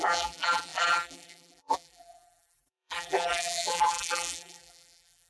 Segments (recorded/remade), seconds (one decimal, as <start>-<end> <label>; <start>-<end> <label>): 0.0-5.3 remade